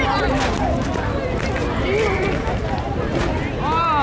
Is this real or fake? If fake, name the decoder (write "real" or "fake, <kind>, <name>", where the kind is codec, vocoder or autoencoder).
real